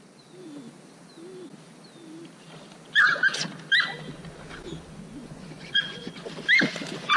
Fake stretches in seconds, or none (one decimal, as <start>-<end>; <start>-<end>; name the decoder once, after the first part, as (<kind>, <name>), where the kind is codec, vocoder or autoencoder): 5.2-6.3 (vocoder, Vocos)